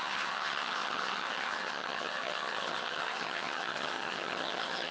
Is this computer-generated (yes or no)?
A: yes